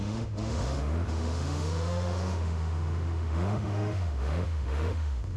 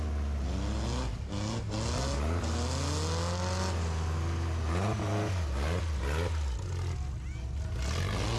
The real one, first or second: second